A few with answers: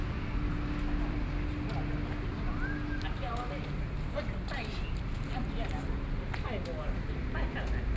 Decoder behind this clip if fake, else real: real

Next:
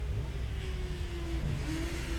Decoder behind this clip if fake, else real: real